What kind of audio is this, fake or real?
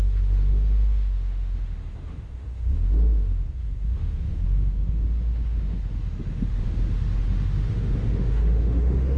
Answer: fake